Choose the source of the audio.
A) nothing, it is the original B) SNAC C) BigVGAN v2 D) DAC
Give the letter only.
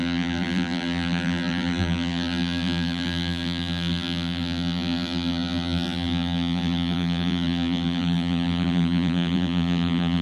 C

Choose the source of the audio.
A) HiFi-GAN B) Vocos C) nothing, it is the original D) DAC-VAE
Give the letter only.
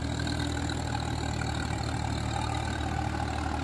C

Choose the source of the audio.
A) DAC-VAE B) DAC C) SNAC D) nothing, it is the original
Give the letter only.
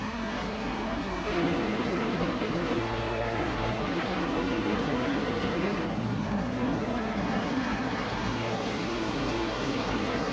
C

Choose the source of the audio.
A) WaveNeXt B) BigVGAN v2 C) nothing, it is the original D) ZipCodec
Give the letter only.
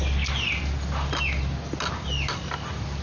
C